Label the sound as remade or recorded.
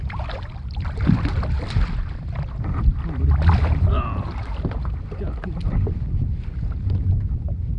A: recorded